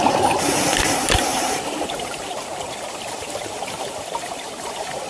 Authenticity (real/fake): fake